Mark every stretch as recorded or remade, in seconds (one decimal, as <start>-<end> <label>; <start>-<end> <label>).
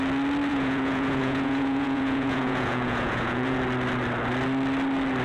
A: 0.0-0.5 recorded; 0.5-3.6 remade; 3.6-5.2 recorded